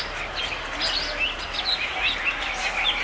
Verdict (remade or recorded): recorded